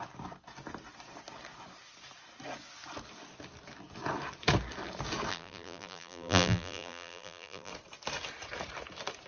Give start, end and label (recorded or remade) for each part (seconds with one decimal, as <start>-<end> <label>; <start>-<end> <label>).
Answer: 0.0-5.3 recorded; 5.3-7.7 remade; 7.7-9.3 recorded